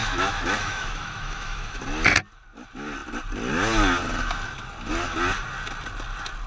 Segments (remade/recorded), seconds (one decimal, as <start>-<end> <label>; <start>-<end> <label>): 0.0-1.8 remade; 1.8-6.5 recorded